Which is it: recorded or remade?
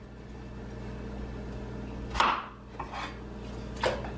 recorded